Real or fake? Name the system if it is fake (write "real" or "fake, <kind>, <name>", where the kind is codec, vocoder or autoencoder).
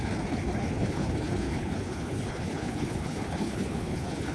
fake, codec, HILCodec